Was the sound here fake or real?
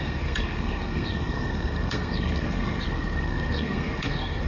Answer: fake